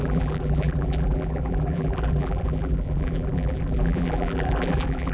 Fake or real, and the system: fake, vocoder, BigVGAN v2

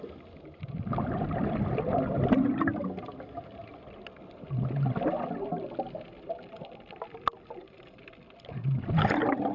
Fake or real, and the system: real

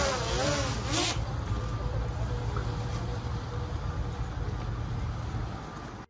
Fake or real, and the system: real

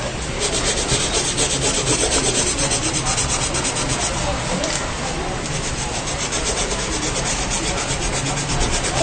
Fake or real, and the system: real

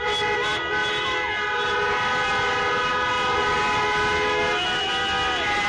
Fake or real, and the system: real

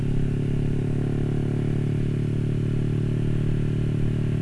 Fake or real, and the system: real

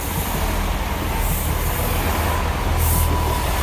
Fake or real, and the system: real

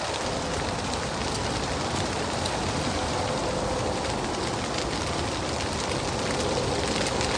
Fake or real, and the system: real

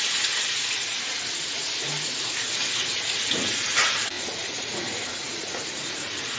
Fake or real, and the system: fake, vocoder, Vocos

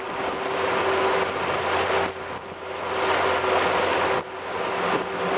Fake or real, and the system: real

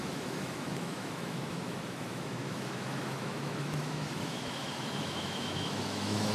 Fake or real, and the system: fake, autoencoder, DAC-VAE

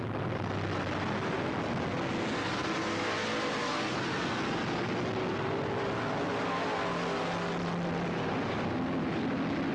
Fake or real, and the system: real